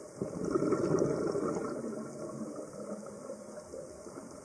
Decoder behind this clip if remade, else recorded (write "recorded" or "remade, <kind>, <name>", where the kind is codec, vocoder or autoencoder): recorded